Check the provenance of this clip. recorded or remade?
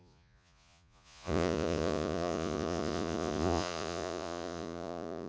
remade